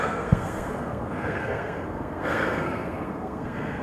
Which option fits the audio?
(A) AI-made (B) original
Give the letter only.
A